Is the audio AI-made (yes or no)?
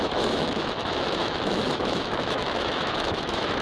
yes